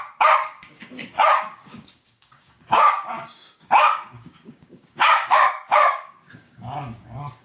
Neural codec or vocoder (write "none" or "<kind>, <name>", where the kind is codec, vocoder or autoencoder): codec, DAC